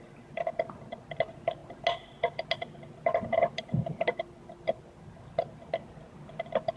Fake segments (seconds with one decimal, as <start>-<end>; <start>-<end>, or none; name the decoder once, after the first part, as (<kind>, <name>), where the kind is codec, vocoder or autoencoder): none